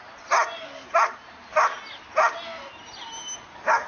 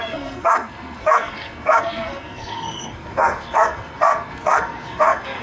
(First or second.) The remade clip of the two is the second